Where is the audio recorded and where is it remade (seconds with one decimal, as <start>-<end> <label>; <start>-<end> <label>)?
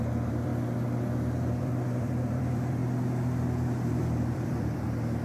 0.0-0.5 remade; 0.5-1.5 recorded; 1.5-2.8 remade; 2.8-3.9 recorded; 3.9-5.2 remade